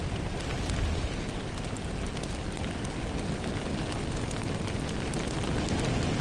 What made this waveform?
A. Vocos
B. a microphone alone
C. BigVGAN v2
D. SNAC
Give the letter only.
B